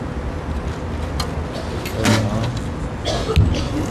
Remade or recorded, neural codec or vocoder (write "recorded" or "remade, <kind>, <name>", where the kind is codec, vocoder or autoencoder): recorded